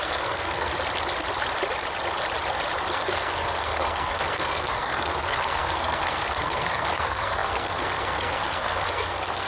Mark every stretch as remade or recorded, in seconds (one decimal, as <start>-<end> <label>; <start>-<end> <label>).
0.0-0.7 remade; 0.7-2.9 recorded; 2.9-9.5 remade